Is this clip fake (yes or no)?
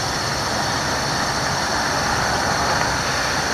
no